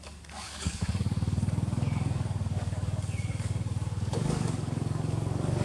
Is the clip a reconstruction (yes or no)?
yes